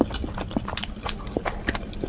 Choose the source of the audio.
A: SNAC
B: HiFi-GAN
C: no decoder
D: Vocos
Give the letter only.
C